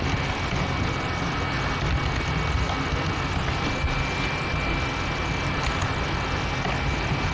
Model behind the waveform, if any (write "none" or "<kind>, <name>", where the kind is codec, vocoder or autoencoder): none